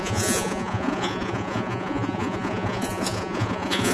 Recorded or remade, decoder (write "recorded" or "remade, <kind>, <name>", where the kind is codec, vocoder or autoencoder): remade, vocoder, Vocos